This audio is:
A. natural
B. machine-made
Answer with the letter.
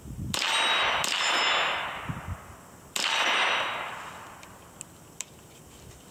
A